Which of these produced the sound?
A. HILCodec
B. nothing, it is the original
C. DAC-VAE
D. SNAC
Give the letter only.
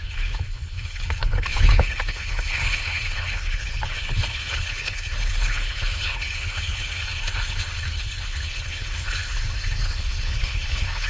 A